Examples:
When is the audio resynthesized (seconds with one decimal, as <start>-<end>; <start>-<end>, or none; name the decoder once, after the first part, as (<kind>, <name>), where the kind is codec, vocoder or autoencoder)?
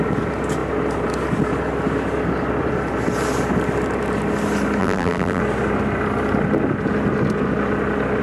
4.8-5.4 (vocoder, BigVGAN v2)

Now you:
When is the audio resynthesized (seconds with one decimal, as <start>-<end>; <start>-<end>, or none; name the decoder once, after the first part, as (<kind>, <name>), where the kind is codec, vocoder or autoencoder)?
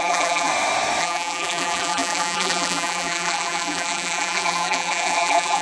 0.0-0.5 (vocoder, BigVGAN v2); 1.0-5.6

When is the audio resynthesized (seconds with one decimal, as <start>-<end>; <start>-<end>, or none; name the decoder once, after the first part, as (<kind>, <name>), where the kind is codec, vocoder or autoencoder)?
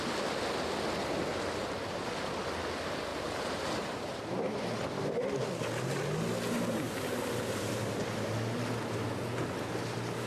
1.6-2.1 (vocoder, BigVGAN v2); 3.1-4.2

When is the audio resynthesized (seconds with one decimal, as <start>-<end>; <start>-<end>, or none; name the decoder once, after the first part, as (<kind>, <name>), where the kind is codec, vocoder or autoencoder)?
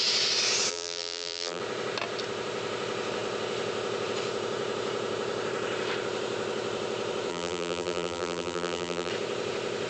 0.7-1.6 (vocoder, BigVGAN v2); 7.3-9.1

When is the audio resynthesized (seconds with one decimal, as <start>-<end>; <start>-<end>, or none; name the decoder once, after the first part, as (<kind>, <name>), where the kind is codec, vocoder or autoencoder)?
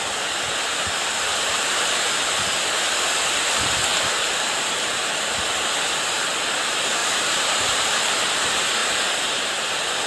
1.3-2.7 (vocoder, BigVGAN v2); 3.9-5.1; 7.0-8.1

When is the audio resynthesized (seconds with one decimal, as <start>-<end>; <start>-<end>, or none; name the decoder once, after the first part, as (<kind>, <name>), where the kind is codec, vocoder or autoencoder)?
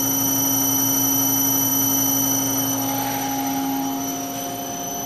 none